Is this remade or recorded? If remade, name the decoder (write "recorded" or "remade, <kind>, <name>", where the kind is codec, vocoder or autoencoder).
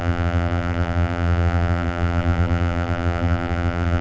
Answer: remade, vocoder, BigVGAN v2